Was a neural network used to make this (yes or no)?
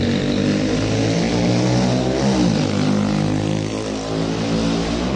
no